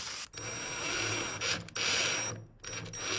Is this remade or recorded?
recorded